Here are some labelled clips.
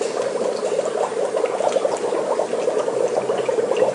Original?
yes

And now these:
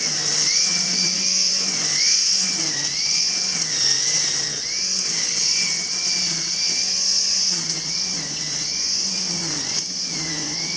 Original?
no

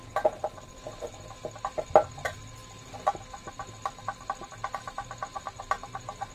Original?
yes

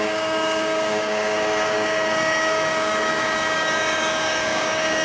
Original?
no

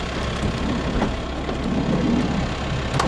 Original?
yes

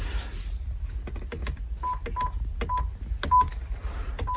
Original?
yes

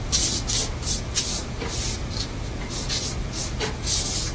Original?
yes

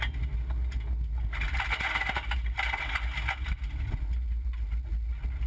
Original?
yes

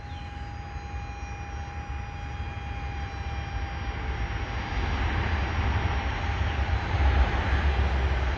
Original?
yes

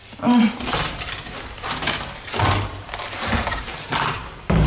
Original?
no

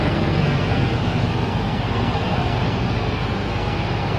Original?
no